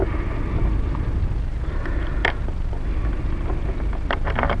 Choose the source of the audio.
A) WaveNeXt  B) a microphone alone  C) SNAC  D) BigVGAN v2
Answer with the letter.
B